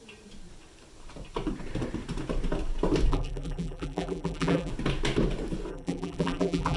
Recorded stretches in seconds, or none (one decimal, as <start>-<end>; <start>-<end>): 0.0-3.1; 4.7-5.7